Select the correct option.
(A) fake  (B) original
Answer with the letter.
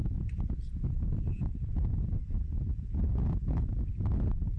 B